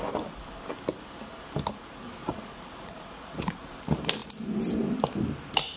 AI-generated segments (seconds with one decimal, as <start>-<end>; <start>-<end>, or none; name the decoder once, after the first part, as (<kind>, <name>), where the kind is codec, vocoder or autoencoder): 2.2-3.6 (vocoder, Vocos)